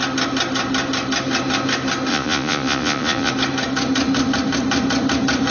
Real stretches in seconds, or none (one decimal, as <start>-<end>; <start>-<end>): 0.0-2.1; 3.3-5.5